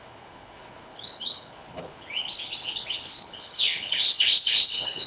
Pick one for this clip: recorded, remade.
remade